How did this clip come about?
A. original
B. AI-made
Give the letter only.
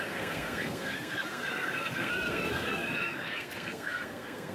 B